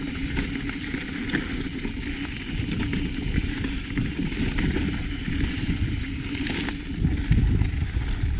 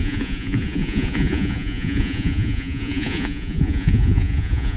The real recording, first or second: first